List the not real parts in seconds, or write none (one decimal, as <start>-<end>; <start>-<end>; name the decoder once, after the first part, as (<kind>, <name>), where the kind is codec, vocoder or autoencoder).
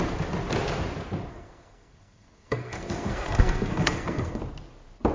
1.3-4.4 (codec, SNAC)